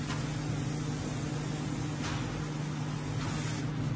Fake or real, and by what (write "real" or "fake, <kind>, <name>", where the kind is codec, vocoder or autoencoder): real